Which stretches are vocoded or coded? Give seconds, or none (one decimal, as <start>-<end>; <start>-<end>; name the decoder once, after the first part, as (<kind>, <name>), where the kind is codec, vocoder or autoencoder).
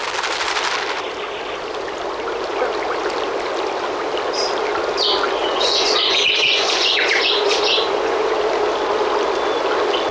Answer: 5.4-8.3 (vocoder, Vocos)